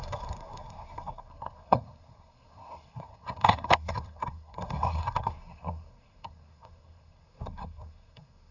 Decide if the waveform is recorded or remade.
remade